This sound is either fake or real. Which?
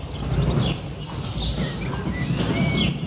real